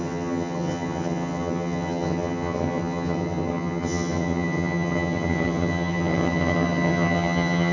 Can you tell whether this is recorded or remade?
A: remade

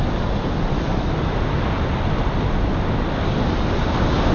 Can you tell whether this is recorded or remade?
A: recorded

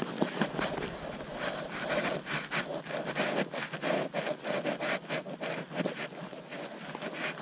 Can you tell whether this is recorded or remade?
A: recorded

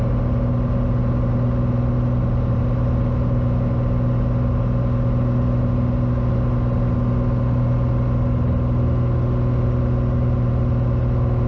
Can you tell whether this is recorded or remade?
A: recorded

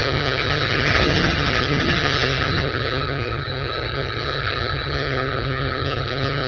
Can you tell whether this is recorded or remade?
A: remade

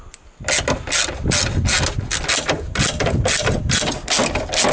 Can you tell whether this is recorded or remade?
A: recorded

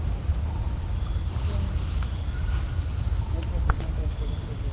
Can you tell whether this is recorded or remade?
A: recorded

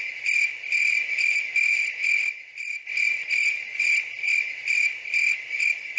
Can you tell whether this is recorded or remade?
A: recorded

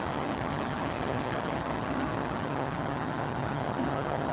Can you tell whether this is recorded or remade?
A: remade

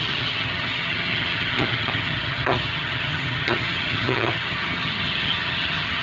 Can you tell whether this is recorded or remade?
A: remade